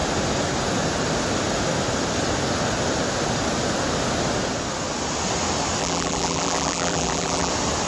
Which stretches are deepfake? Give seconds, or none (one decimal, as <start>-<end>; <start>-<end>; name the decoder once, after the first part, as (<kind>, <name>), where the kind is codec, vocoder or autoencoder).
5.8-7.5 (vocoder, BigVGAN v2)